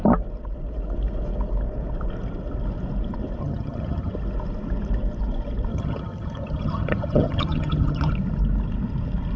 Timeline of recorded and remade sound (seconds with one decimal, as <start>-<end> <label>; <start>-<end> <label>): 0.0-3.4 recorded; 3.4-4.1 remade; 4.1-5.7 recorded; 5.7-8.1 remade; 8.1-9.4 recorded